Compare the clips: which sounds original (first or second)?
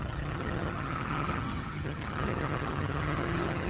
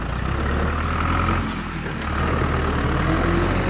second